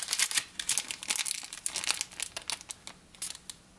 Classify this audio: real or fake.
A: real